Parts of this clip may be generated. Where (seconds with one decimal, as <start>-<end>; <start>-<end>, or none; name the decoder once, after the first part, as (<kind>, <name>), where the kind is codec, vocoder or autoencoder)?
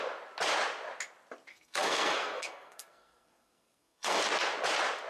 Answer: 1.5-4.2 (codec, SNAC)